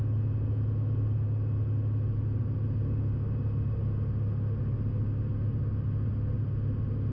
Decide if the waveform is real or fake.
real